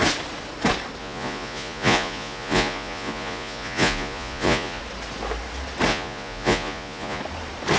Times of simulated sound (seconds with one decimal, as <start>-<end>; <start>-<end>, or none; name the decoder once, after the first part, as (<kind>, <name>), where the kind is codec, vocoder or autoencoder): 1.0-4.8 (vocoder, Vocos); 5.9-7.2